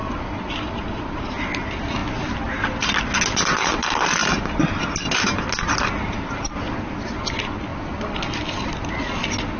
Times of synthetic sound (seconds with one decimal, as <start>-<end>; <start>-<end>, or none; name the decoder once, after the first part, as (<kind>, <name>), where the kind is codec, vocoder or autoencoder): 4.2-5.2 (vocoder, BigVGAN v2); 7.7-8.7